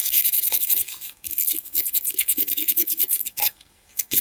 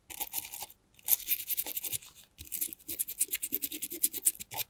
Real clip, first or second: second